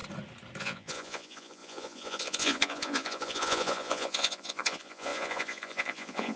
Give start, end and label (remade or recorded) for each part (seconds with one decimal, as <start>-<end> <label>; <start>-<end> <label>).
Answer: 0.0-0.6 recorded; 0.6-6.4 remade